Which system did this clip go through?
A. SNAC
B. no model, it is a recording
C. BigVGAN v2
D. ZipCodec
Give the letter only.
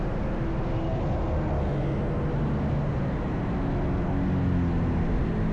B